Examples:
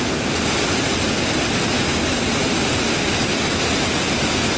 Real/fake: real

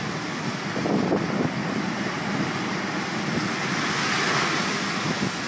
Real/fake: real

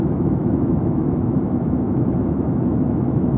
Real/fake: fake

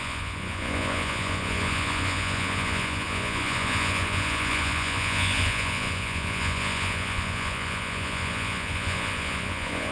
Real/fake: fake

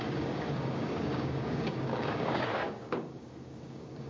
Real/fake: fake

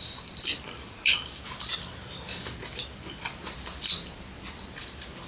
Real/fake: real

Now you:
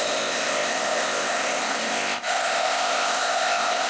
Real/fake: fake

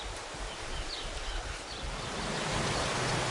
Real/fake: real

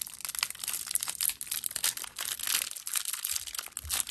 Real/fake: real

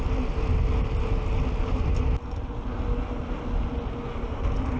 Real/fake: real